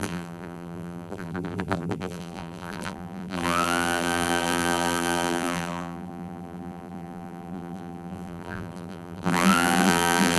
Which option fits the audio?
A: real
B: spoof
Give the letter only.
B